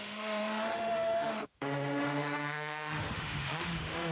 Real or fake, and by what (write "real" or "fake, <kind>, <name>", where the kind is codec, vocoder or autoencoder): fake, autoencoder, DAC-VAE